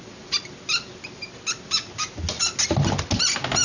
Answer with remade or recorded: recorded